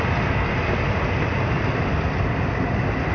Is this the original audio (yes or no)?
yes